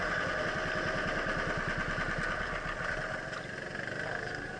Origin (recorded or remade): recorded